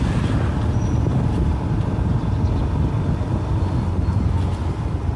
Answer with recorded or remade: recorded